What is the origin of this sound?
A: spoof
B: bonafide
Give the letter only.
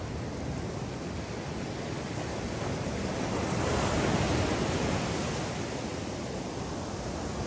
B